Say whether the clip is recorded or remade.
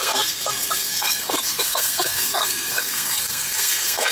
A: remade